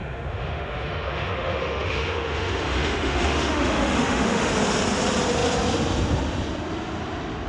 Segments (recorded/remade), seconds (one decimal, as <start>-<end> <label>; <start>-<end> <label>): 0.0-4.5 remade; 4.5-7.5 recorded

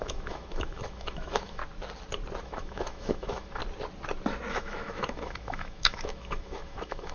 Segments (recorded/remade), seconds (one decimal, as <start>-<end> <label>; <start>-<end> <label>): 0.0-1.6 remade; 1.6-2.4 recorded; 2.4-3.6 remade; 3.6-4.5 recorded; 4.5-7.1 remade